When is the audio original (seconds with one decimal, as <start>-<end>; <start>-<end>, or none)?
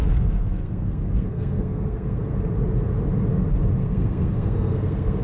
2.2-3.8